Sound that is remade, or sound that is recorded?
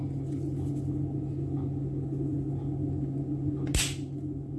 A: recorded